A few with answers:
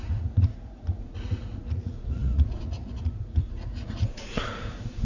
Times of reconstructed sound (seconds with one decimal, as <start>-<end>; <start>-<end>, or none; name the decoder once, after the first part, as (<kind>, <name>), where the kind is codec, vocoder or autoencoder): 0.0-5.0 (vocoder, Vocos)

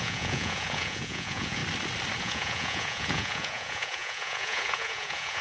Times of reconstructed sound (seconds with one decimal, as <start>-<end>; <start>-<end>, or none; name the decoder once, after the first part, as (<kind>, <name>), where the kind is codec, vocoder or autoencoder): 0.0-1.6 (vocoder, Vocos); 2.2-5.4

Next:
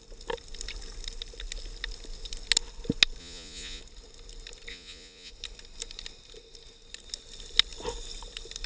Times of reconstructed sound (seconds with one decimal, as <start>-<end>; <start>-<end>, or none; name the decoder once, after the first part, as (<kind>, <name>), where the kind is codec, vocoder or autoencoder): 3.2-3.8 (vocoder, Vocos); 4.7-5.3